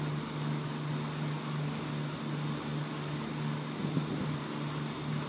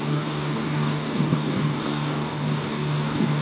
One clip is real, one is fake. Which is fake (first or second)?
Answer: second